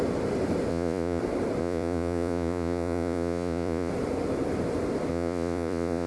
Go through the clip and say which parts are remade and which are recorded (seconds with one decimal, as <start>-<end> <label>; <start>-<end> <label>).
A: 0.0-0.7 recorded; 0.7-1.2 remade; 1.2-1.6 recorded; 1.6-3.9 remade; 3.9-5.1 recorded; 5.1-6.1 remade